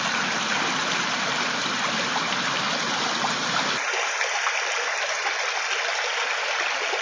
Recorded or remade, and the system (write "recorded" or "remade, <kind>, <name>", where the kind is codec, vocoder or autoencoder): recorded